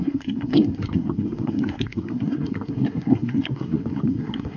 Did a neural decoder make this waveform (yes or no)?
yes